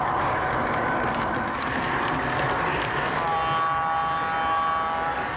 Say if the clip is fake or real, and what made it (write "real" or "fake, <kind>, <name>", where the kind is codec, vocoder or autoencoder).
real